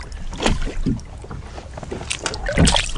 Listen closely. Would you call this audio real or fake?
real